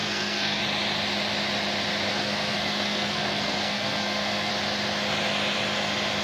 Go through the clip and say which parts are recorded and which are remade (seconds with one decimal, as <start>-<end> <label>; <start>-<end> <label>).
0.0-0.6 remade; 0.6-2.1 recorded; 2.1-4.5 remade; 4.5-6.2 recorded